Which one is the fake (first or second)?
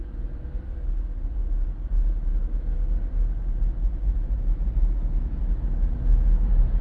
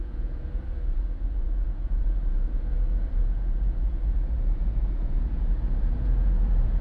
second